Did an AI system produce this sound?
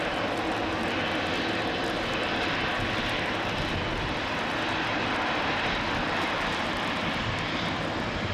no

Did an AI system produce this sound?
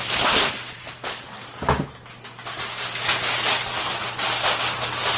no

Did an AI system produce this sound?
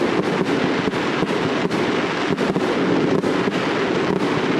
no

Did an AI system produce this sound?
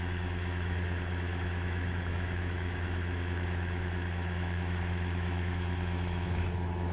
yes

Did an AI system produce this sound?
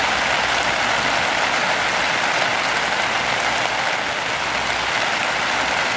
no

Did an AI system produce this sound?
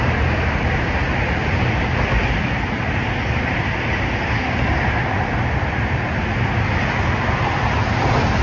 no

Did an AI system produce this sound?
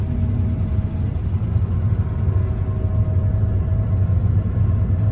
no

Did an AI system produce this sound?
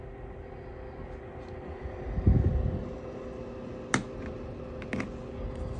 no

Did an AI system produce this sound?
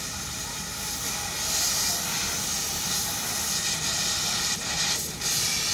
no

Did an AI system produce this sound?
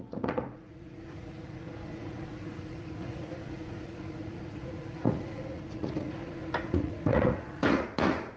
yes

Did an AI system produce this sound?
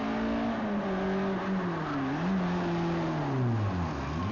no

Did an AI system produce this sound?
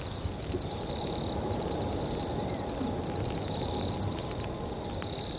no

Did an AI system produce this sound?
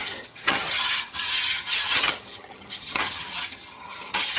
yes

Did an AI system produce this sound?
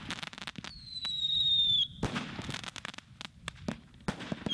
no